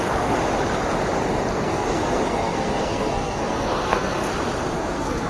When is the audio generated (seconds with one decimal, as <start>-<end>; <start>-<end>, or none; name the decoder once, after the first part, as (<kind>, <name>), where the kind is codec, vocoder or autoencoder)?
0.0-0.4 (codec, SNAC); 1.5-4.2; 4.7-5.3